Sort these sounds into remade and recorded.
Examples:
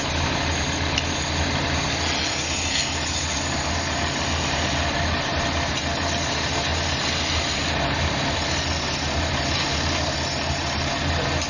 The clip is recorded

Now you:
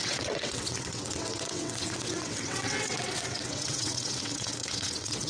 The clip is remade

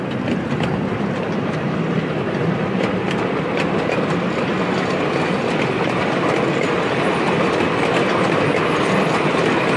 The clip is recorded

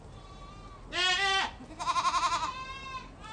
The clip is recorded